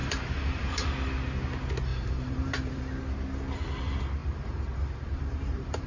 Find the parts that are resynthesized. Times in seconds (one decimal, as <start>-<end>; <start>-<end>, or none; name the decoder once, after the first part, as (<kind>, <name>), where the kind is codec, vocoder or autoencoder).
0.0-0.9 (vocoder, BigVGAN v2); 1.9-2.8; 4.2-5.9

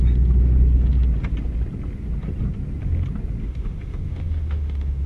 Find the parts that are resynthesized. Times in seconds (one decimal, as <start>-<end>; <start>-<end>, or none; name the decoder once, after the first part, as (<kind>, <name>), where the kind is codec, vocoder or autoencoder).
3.4-5.1 (autoencoder, DAC-VAE)

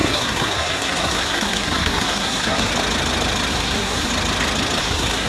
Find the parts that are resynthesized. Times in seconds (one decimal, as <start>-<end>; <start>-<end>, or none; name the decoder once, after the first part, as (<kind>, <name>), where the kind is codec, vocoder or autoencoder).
0.0-2.7 (codec, SNAC); 3.5-4.1; 4.8-5.3